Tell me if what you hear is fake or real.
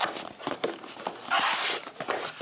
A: real